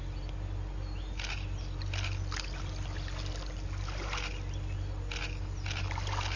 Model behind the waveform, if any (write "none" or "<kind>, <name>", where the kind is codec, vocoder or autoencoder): none